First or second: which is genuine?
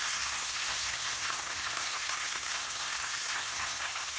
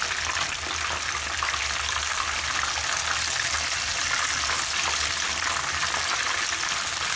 second